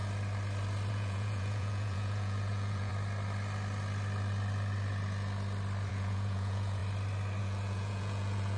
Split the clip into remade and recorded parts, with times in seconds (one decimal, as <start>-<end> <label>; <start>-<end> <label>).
0.0-0.9 recorded; 0.9-2.9 remade; 2.9-5.9 recorded; 5.9-6.8 remade; 6.8-7.4 recorded; 7.4-8.6 remade